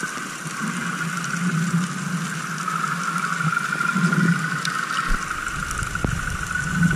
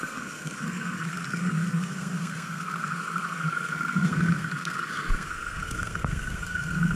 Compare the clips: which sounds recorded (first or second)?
first